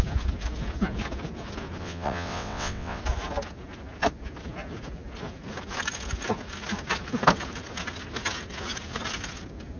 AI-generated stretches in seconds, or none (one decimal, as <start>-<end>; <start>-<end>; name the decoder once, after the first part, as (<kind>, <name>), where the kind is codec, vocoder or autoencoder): 1.8-3.0 (vocoder, WaveNeXt)